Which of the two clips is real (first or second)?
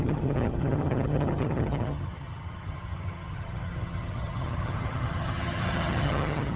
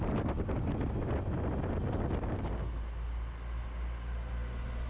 second